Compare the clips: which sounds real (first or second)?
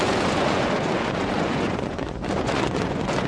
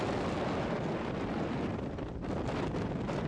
second